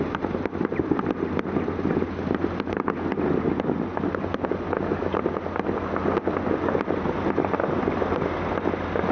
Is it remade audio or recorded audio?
recorded